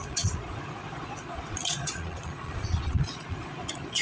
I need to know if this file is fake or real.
fake